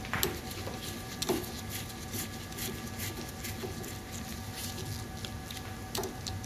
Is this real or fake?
real